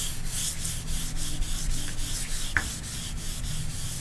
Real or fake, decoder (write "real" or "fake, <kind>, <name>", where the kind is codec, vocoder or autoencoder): real